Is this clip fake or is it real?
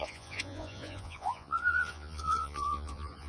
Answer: fake